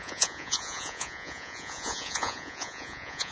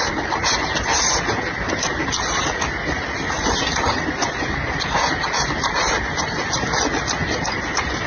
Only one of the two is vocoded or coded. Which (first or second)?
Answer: first